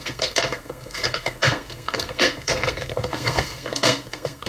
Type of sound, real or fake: fake